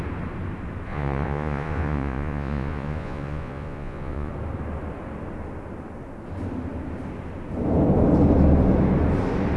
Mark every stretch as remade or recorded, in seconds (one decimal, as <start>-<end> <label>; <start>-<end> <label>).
0.0-0.9 recorded; 0.9-4.3 remade; 4.3-9.6 recorded